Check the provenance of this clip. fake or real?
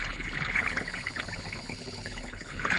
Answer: fake